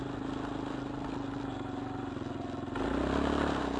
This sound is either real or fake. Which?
real